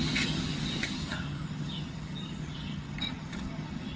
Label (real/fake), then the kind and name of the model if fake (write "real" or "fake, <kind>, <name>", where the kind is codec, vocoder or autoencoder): fake, vocoder, HiFi-GAN